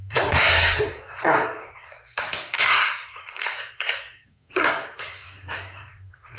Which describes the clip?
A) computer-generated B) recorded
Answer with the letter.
A